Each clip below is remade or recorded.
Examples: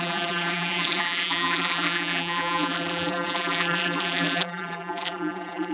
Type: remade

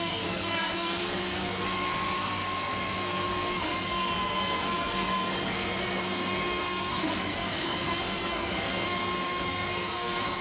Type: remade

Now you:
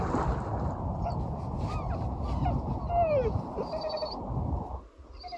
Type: recorded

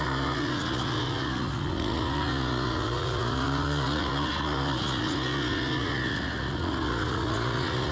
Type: remade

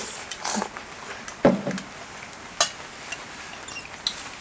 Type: recorded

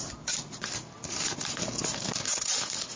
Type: recorded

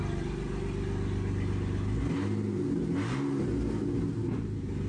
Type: recorded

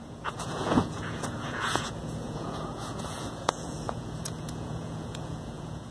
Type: remade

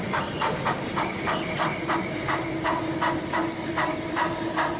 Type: recorded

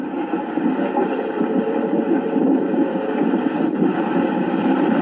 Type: remade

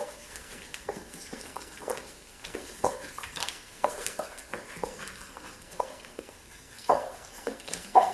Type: remade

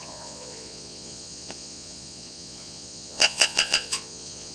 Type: remade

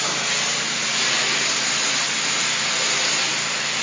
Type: recorded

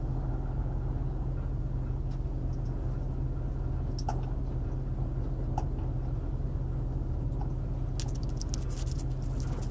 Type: recorded